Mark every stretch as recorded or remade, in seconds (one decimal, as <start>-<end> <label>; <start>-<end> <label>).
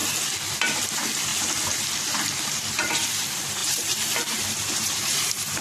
0.0-0.5 recorded; 0.5-1.3 remade; 1.3-2.0 recorded; 2.0-5.6 remade